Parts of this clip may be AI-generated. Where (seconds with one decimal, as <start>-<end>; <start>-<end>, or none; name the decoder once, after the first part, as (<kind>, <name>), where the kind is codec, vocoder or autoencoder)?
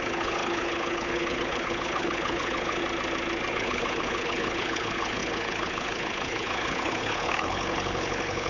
0.0-2.8 (codec, HILCodec); 3.5-8.5